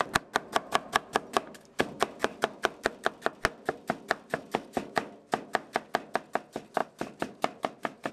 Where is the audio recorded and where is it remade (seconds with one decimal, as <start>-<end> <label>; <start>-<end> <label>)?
0.0-2.2 recorded; 2.2-3.1 remade; 3.1-6.8 recorded; 6.8-8.1 remade